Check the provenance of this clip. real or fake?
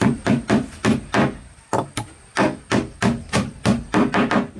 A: real